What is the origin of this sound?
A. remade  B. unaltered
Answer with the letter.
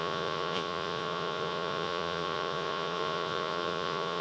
A